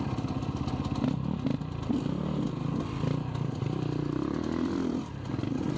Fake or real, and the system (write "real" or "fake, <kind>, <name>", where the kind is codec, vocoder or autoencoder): real